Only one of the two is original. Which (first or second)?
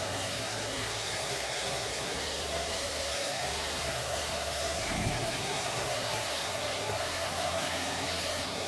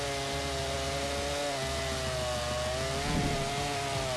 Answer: second